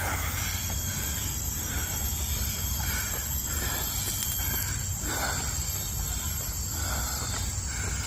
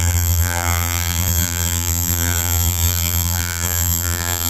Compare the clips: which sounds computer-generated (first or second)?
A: second